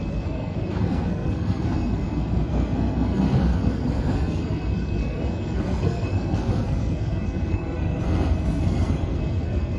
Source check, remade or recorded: remade